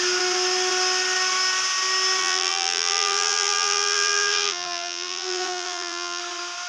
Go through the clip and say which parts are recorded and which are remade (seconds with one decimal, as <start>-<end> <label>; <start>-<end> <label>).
0.0-2.2 recorded; 2.2-6.2 remade; 6.2-6.7 recorded